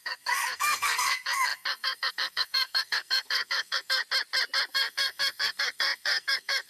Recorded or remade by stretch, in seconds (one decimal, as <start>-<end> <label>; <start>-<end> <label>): 0.0-4.0 remade; 4.0-4.7 recorded; 4.7-6.7 remade